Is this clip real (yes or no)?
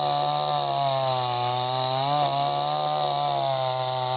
yes